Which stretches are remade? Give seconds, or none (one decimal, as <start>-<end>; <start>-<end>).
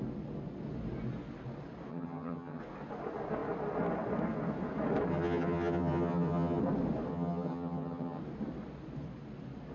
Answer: 1.9-2.6; 5.1-6.6; 7.1-8.2